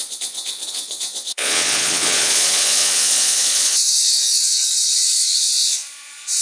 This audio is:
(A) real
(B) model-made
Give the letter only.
B